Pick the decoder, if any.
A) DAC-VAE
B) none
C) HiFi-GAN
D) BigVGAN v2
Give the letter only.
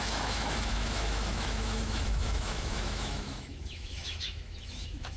A